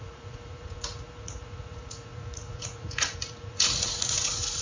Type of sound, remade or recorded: remade